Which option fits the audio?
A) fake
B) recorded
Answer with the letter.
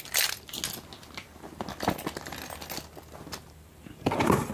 B